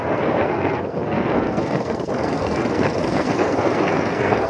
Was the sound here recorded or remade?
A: remade